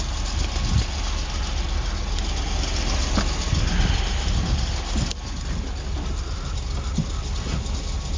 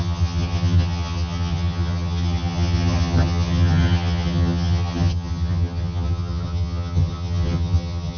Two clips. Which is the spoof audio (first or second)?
second